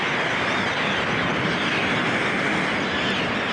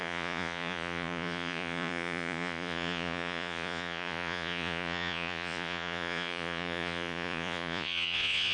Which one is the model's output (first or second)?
second